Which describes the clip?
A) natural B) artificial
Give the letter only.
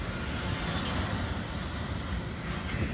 A